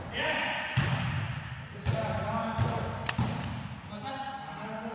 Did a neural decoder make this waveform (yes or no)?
no